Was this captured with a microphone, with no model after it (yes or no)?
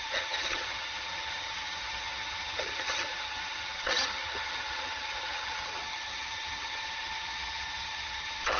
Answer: no